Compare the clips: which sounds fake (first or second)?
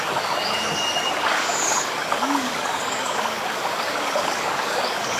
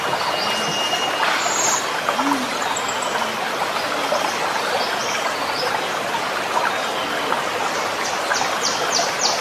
first